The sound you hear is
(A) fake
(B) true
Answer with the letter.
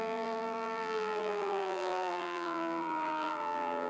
A